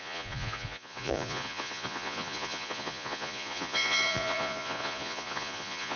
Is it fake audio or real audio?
fake